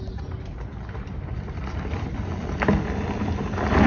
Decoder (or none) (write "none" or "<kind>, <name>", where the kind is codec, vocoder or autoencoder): none